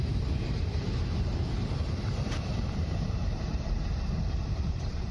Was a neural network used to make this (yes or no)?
yes